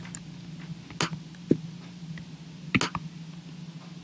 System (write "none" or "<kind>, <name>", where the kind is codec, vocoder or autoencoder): none